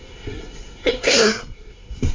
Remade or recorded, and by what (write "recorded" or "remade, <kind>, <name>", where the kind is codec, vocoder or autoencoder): remade, codec, SNAC